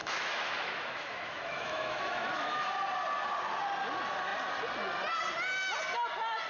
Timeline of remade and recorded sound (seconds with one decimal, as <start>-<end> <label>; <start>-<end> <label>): 0.0-2.7 remade; 2.7-6.5 recorded